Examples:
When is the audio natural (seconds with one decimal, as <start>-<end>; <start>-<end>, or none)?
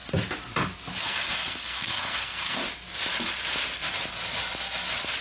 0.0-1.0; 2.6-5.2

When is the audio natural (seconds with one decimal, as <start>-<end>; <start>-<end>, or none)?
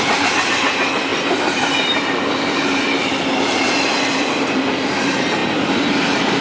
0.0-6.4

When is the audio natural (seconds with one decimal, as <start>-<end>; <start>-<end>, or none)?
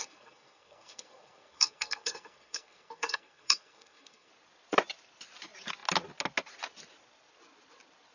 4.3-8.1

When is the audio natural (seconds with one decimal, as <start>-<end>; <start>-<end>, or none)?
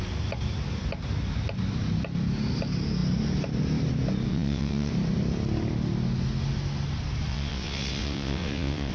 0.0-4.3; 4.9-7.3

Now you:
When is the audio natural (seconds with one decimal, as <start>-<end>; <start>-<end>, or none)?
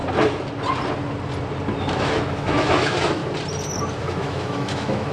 0.0-1.8; 3.2-4.0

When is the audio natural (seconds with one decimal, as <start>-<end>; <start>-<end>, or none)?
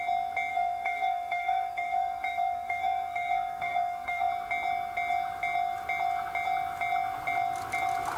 0.0-0.5; 4.3-8.2